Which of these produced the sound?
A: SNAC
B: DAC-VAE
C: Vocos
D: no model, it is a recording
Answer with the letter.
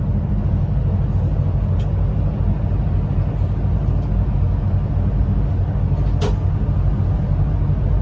D